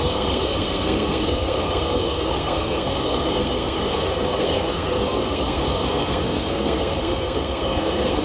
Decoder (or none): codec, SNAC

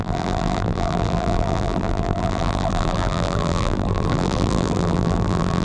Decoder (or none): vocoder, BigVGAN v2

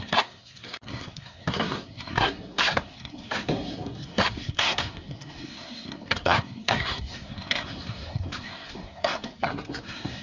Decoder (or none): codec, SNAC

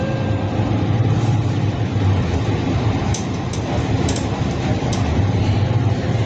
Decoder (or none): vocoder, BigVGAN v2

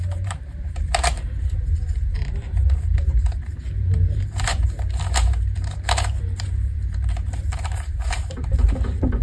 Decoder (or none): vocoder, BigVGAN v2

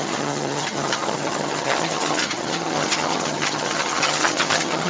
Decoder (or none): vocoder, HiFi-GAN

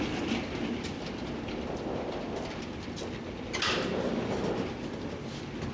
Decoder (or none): none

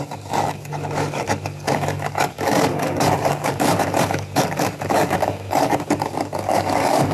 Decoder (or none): codec, DAC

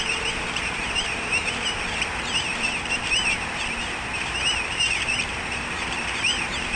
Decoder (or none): vocoder, BigVGAN v2